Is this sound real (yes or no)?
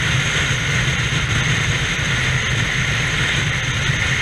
yes